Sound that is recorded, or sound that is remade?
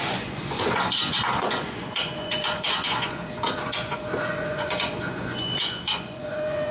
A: remade